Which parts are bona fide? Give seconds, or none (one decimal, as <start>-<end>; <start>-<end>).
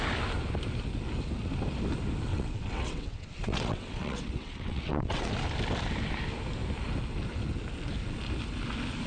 0.0-2.3; 5.3-9.1